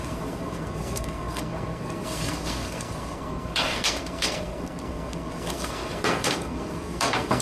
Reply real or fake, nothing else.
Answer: fake